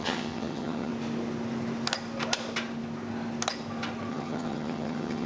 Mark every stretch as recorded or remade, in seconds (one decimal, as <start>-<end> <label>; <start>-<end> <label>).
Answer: 0.0-0.9 remade; 0.9-4.1 recorded; 4.1-5.3 remade